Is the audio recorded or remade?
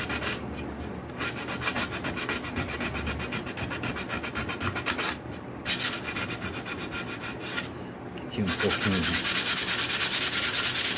recorded